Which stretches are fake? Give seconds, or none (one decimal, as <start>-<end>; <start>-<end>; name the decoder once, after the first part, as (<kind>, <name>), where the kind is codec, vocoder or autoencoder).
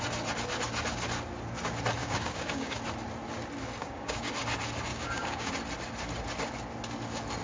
2.0-2.7 (codec, DAC); 3.8-4.3; 4.9-5.5